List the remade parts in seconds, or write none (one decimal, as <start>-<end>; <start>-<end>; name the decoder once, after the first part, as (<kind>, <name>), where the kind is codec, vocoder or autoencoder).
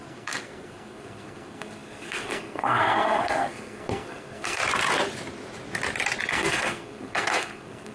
0.0-4.6 (codec, SNAC); 6.3-7.9